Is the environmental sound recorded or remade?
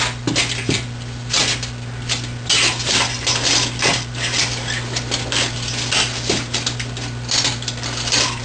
recorded